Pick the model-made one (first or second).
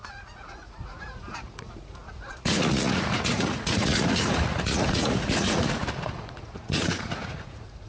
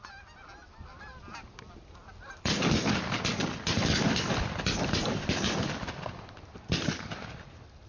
first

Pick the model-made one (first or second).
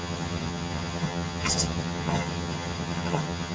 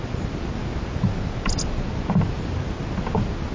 first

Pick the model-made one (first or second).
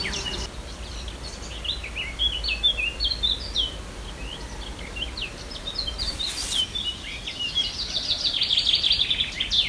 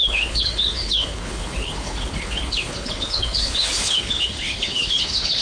second